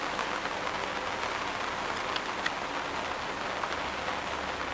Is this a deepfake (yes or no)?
no